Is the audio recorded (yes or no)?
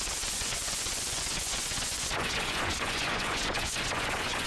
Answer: no